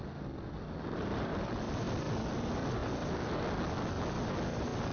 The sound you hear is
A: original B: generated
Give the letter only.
A